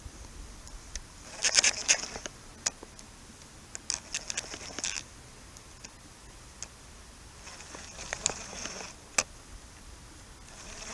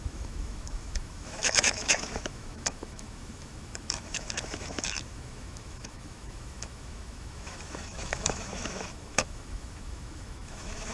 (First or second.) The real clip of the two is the first